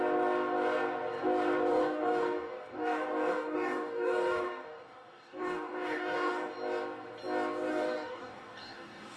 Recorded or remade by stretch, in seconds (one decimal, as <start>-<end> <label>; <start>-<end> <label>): 0.0-1.7 recorded; 1.7-6.5 remade; 6.5-7.7 recorded; 7.7-9.2 remade

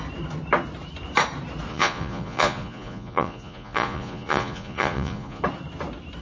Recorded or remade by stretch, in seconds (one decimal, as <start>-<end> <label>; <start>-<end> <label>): 0.0-1.7 recorded; 1.7-5.4 remade; 5.4-6.2 recorded

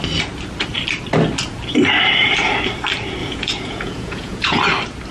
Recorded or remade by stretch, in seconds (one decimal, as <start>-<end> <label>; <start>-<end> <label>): 0.0-3.2 recorded; 3.2-4.6 remade; 4.6-5.1 recorded

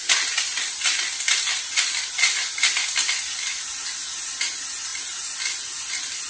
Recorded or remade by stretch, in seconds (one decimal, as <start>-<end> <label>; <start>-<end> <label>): 0.0-6.3 recorded